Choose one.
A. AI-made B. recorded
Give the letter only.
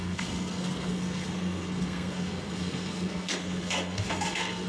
A